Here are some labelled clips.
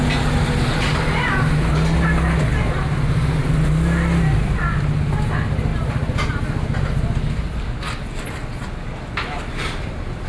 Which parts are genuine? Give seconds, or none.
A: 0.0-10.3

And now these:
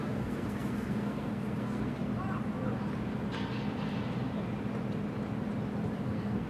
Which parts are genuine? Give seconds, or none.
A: 2.1-6.0

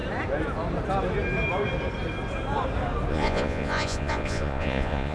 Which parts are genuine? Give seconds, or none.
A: 0.0-3.1

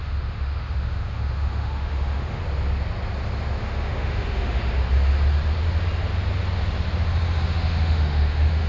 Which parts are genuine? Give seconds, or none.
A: 2.4-3.6; 4.6-7.4

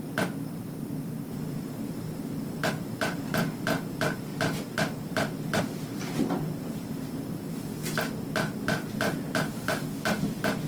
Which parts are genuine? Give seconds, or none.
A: 4.3-5.5; 7.8-9.5

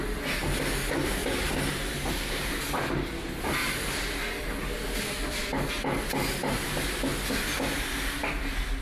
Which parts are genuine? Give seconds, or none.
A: 0.0-8.8

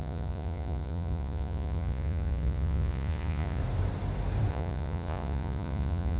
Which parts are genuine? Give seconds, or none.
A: 3.6-4.5

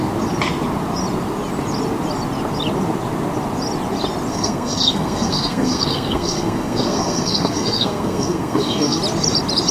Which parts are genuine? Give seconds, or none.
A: 0.0-4.3; 9.0-9.7